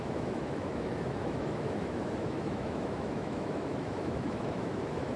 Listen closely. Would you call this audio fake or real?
fake